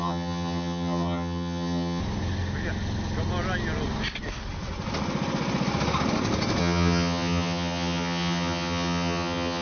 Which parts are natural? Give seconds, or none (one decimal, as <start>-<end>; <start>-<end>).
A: 2.0-6.6